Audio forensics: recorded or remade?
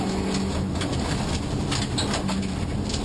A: recorded